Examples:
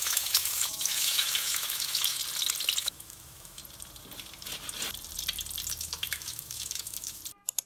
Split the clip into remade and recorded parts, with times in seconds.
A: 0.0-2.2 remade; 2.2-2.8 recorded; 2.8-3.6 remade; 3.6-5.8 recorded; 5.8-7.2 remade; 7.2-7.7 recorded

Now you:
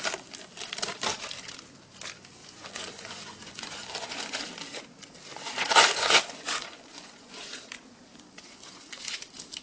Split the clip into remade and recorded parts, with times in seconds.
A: 0.0-2.4 recorded; 2.4-4.4 remade; 4.4-5.3 recorded; 5.3-7.6 remade; 7.6-8.1 recorded; 8.1-9.2 remade; 9.2-9.6 recorded

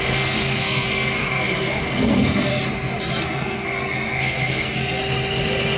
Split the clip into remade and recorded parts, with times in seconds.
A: 0.0-2.5 remade; 2.5-3.2 recorded; 3.2-5.0 remade; 5.0-5.8 recorded

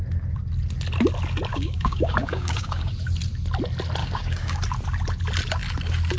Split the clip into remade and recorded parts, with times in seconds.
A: 0.0-1.5 recorded; 1.5-2.9 remade; 2.9-4.0 recorded; 4.0-4.6 remade; 4.6-6.2 recorded

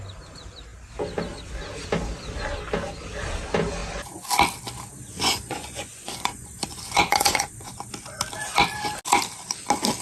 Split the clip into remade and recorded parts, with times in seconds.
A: 0.0-5.1 recorded; 5.1-7.7 remade; 7.7-10.0 recorded

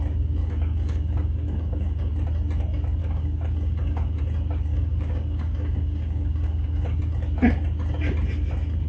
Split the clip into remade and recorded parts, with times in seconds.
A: 0.0-0.4 recorded; 0.4-2.1 remade; 2.1-3.0 recorded; 3.0-4.2 remade; 4.2-4.7 recorded; 4.7-7.0 remade; 7.0-8.9 recorded

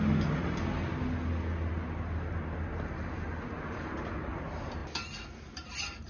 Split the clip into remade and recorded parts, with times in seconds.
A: 0.0-6.1 recorded

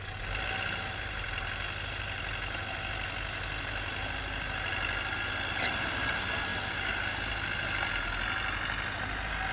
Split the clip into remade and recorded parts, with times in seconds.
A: 0.0-9.5 recorded